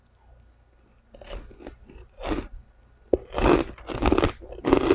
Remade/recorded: recorded